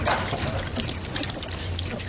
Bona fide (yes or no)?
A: yes